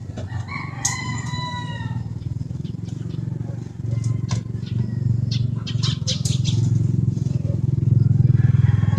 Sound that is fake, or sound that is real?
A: real